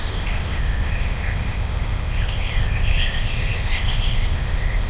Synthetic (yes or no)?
yes